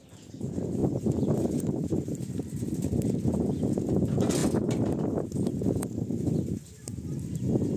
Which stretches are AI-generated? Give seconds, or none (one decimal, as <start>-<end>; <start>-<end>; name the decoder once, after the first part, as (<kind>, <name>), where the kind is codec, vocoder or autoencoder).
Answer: none